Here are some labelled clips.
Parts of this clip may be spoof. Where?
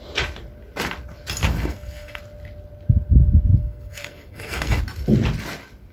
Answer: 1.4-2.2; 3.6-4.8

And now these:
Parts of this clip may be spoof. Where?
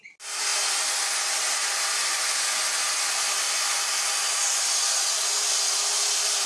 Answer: none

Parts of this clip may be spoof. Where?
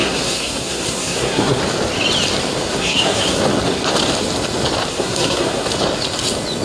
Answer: 0.0-1.6; 2.7-3.4; 4.9-5.7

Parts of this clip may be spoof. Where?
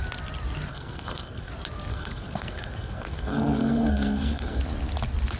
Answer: 0.7-1.5; 1.9-4.6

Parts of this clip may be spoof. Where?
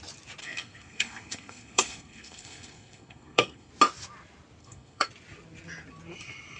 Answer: 0.4-3.7; 4.6-5.1